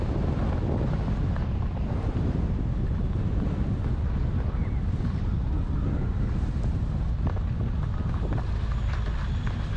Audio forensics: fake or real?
real